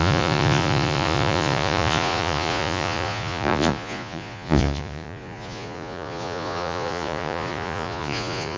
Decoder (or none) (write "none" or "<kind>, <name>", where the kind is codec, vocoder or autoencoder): vocoder, Vocos